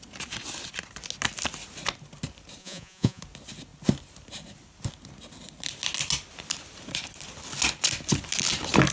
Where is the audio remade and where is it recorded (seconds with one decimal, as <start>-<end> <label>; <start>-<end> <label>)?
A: 0.0-2.6 recorded; 2.6-3.2 remade; 3.2-8.9 recorded